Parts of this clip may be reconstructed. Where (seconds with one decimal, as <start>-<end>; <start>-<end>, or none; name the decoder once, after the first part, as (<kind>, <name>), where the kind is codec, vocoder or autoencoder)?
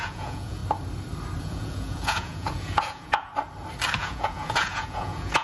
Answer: 0.0-0.6 (vocoder, Vocos); 1.4-3.3; 4.0-5.4